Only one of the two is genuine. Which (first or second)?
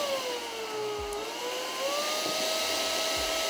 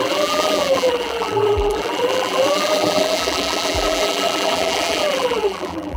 first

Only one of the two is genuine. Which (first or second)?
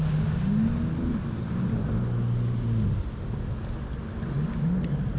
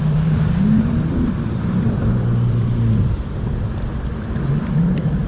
first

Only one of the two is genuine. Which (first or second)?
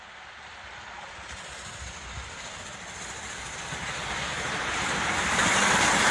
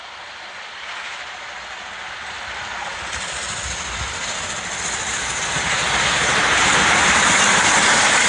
second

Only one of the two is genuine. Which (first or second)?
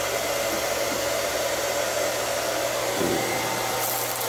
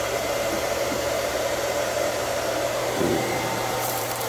first